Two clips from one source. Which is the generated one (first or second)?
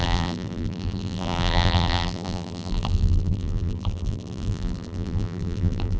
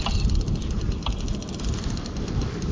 first